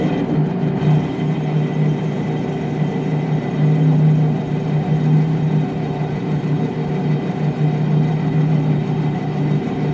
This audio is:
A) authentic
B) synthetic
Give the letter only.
A